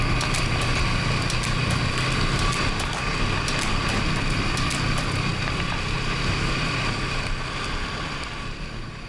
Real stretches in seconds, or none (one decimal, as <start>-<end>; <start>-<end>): 0.0-9.1